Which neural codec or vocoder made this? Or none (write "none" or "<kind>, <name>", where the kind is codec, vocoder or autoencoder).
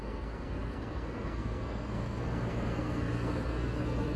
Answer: codec, SNAC